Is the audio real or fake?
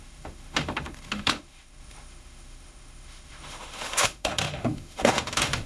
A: fake